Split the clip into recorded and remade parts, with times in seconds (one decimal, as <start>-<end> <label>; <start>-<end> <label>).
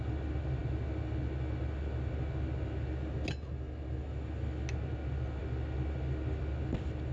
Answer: 0.0-7.1 recorded